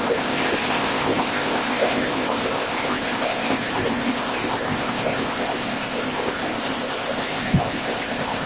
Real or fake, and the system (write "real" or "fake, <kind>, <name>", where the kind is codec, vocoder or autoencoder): fake, codec, ZipCodec